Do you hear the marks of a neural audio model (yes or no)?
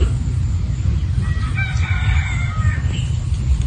no